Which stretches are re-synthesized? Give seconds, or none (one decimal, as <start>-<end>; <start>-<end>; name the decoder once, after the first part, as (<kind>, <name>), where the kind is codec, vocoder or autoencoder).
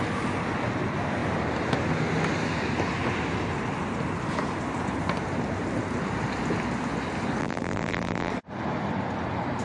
7.4-8.3 (vocoder, BigVGAN v2)